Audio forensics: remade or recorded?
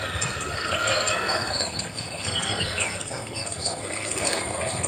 remade